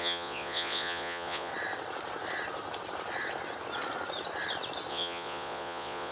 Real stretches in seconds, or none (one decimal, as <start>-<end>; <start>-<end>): 1.5-4.9